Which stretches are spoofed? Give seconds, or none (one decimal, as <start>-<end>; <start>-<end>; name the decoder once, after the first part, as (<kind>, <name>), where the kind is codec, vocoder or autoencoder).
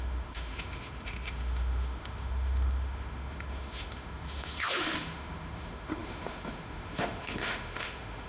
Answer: 0.0-8.3 (autoencoder, DAC-VAE)